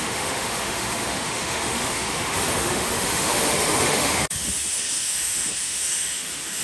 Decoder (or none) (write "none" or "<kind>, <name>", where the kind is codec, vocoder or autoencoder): autoencoder, DAC-VAE